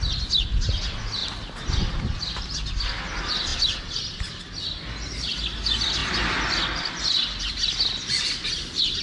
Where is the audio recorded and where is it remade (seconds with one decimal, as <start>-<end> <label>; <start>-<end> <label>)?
0.0-9.0 recorded